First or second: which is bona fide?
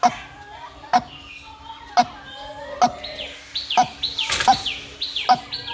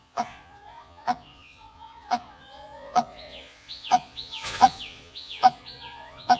first